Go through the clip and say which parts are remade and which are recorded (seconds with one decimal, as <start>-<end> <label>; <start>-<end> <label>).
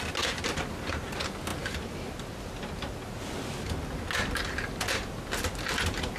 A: 0.0-6.2 recorded